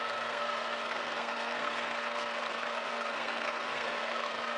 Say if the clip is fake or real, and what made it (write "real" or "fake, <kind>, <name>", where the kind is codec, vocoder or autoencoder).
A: fake, codec, SNAC